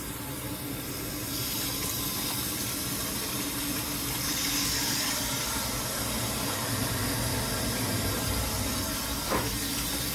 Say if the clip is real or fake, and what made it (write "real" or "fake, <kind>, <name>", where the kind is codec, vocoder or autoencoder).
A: real